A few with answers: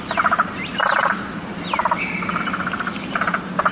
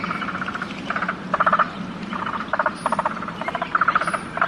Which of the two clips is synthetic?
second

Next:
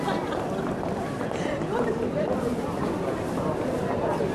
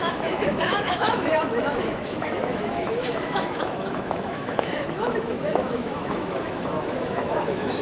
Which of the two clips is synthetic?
second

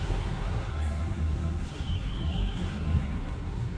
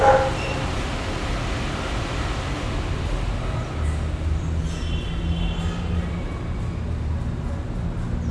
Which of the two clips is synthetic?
first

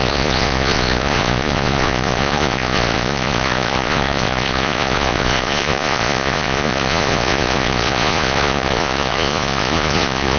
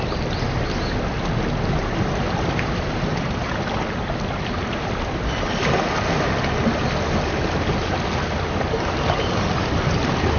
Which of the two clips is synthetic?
first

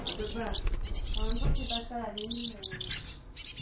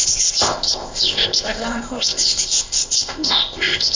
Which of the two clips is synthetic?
second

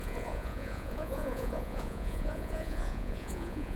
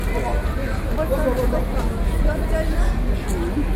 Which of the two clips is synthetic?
first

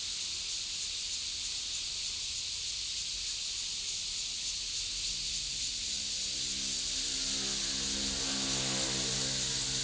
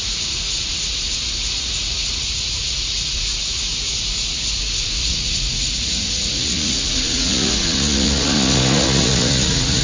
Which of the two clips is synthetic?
second